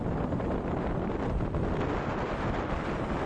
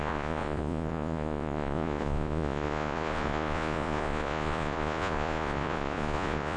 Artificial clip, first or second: second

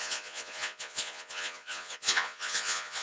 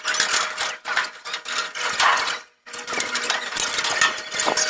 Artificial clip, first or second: first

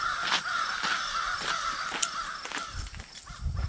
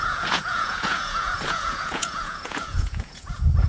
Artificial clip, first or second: second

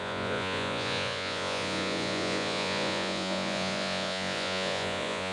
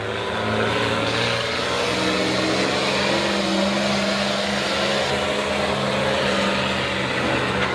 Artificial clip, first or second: first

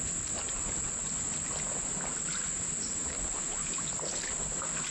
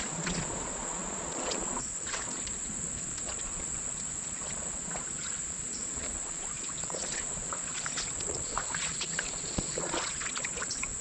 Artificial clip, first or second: second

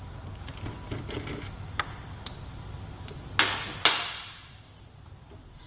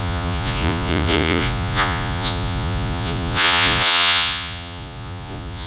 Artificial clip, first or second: second